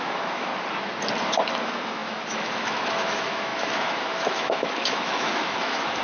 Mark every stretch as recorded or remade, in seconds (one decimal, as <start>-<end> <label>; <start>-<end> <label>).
0.0-0.5 remade; 0.5-1.5 recorded; 1.5-6.0 remade